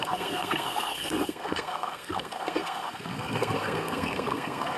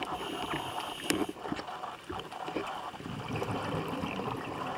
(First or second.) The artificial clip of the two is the first